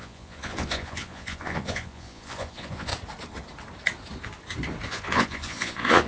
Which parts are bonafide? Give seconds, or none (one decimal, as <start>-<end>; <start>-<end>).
2.9-4.9